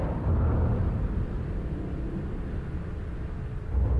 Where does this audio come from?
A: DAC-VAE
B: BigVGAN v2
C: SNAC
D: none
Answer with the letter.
B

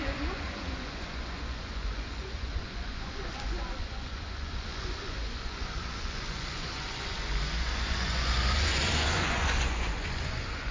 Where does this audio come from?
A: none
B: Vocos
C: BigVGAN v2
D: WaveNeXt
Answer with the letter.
B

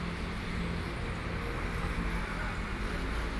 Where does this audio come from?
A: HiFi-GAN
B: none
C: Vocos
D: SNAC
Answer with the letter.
B